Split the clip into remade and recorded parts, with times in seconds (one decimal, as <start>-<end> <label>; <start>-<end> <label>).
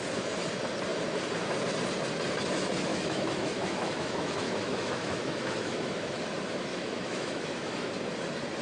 0.0-2.9 recorded; 2.9-6.2 remade; 6.2-6.7 recorded; 6.7-7.9 remade; 7.9-8.6 recorded